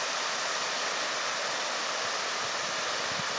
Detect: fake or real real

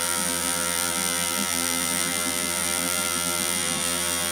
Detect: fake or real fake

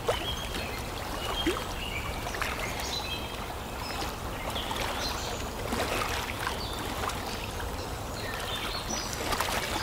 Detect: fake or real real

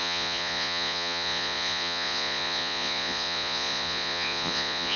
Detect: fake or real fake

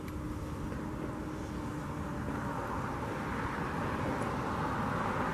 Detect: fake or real real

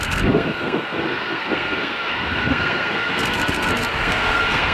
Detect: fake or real fake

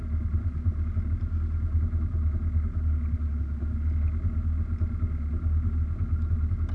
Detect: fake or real real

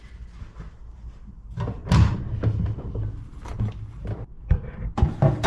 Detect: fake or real real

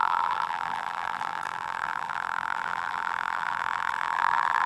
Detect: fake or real fake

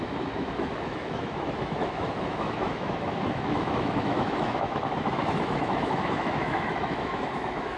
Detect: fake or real fake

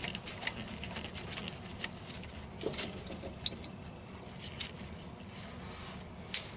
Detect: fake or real real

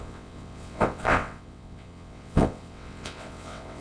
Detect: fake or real fake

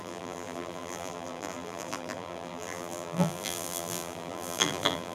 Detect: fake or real fake